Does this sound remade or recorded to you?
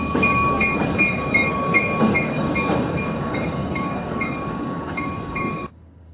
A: remade